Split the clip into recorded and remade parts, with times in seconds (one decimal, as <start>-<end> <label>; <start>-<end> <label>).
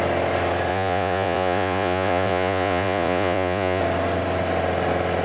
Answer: 0.0-0.7 recorded; 0.7-3.8 remade; 3.8-5.2 recorded